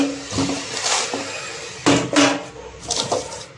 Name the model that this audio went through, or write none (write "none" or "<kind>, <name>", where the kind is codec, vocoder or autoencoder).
none